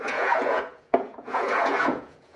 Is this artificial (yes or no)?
yes